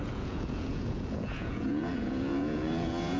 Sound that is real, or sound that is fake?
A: fake